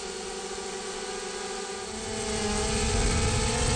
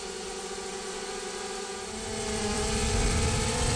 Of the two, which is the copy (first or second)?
second